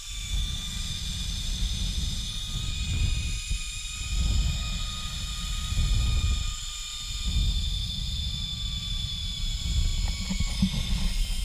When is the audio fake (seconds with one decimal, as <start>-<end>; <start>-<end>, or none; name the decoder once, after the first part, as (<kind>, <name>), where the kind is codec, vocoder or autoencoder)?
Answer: none